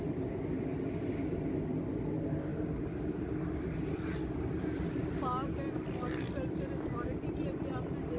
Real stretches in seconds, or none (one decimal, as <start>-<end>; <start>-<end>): 0.0-8.2